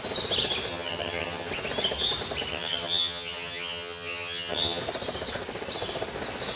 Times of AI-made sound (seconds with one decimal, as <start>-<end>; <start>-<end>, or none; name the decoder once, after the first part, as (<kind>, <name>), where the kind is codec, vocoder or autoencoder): 0.7-1.5 (vocoder, HiFi-GAN); 2.5-4.8